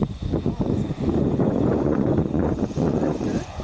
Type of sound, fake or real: fake